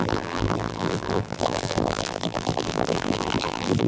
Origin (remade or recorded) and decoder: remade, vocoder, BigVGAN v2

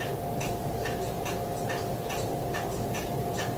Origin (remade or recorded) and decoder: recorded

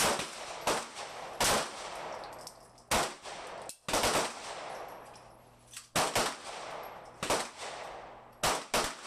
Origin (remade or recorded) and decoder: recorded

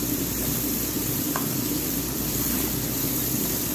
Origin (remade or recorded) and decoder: remade, vocoder, BigVGAN v2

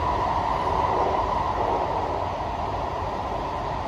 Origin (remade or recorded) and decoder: recorded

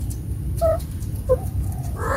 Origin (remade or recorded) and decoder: recorded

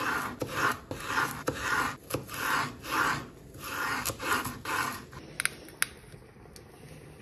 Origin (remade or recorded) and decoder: recorded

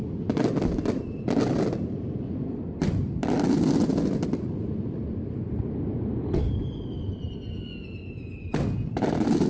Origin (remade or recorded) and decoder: recorded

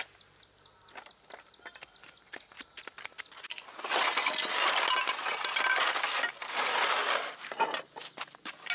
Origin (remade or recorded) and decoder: recorded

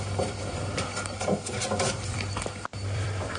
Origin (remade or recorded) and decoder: remade, vocoder, BigVGAN v2